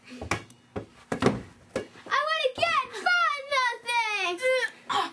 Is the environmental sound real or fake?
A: real